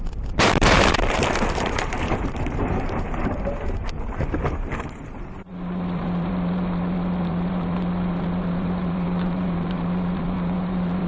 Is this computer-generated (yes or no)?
yes